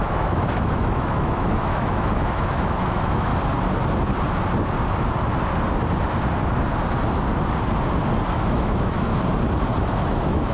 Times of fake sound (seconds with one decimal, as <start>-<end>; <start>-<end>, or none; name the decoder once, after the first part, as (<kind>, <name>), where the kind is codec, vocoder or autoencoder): 0.0-3.3 (autoencoder, DAC-VAE); 8.3-9.1; 9.8-10.5